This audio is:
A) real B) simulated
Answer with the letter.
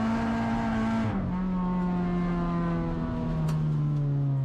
A